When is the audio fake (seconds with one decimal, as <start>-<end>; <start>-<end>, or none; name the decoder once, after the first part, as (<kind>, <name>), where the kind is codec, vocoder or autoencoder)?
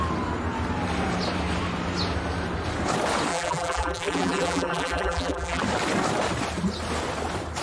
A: 3.3-5.6 (vocoder, BigVGAN v2)